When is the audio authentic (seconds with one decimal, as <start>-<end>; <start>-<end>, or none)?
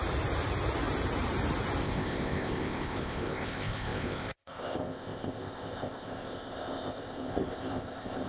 0.0-1.8